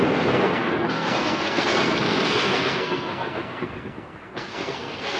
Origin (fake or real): fake